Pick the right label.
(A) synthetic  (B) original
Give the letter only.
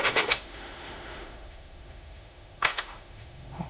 A